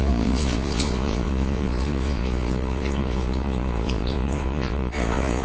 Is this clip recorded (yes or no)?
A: no